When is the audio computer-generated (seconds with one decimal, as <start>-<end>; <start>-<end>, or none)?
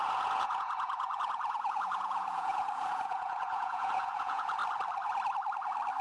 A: 0.0-4.6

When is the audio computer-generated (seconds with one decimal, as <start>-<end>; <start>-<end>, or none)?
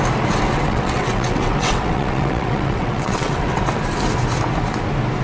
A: 0.5-3.6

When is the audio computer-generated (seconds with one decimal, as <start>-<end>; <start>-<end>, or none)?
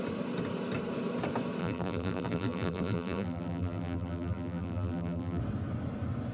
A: 1.6-5.4